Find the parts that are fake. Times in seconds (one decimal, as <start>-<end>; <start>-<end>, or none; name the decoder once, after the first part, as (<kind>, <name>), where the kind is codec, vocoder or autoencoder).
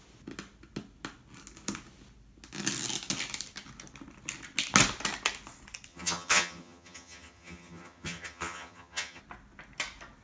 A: 5.9-9.2 (vocoder, HiFi-GAN)